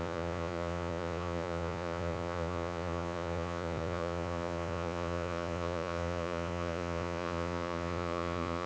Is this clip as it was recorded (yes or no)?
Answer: no